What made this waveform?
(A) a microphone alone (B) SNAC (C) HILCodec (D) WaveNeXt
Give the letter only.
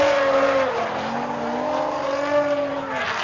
A